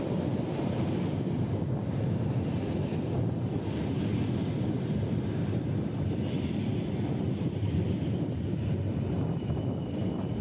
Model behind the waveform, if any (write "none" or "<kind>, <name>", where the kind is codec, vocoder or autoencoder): vocoder, BigVGAN v2